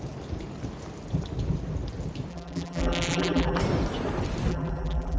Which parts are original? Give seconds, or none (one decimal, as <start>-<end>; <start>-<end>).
0.0-2.3; 3.6-4.5